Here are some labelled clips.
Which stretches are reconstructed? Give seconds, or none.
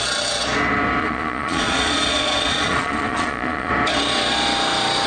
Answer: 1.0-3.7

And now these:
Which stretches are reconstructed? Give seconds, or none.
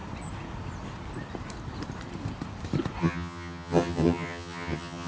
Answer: 3.0-5.1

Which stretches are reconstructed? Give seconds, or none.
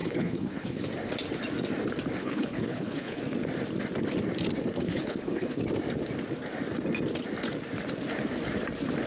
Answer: 0.0-0.8; 2.2-3.2; 4.9-5.6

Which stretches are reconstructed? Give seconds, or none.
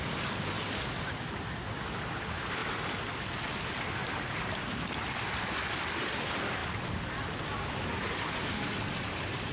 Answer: none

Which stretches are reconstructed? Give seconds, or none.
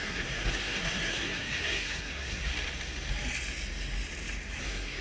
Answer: 0.0-2.5; 4.6-5.0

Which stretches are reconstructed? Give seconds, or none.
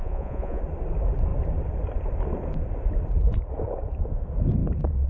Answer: 0.0-0.6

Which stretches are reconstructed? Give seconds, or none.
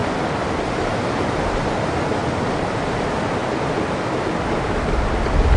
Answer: none